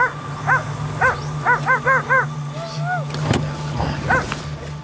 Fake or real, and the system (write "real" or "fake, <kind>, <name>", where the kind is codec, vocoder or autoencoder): real